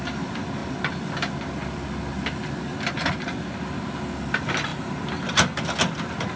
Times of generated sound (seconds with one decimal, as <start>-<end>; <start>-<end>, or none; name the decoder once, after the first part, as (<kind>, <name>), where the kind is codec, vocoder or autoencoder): none